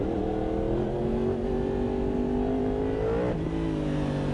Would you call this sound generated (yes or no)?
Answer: no